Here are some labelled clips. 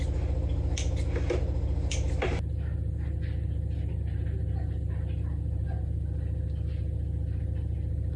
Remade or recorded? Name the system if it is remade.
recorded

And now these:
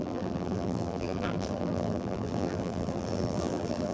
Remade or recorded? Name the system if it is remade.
remade, vocoder, BigVGAN v2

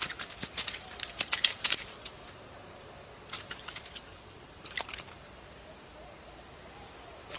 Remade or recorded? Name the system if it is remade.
remade, vocoder, BigVGAN v2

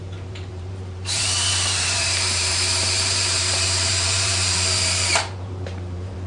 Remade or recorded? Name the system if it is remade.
remade, vocoder, BigVGAN v2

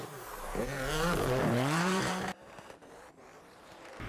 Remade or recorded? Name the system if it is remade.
remade, vocoder, BigVGAN v2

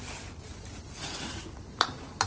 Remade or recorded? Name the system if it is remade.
recorded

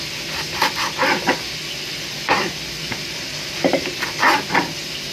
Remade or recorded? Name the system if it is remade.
recorded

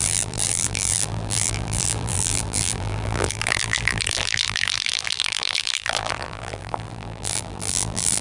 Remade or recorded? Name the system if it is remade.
remade, vocoder, BigVGAN v2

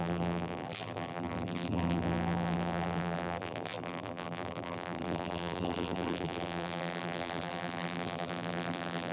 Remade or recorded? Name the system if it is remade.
remade, vocoder, BigVGAN v2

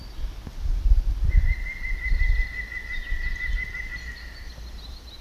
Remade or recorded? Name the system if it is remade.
recorded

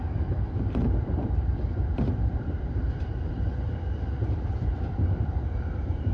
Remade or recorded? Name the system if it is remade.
remade, vocoder, BigVGAN v2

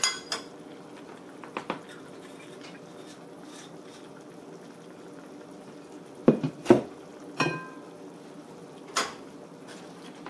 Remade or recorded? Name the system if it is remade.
recorded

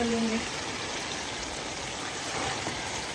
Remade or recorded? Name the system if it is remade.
remade, vocoder, BigVGAN v2